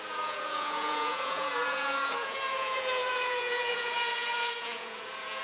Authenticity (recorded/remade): remade